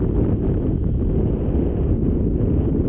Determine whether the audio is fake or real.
real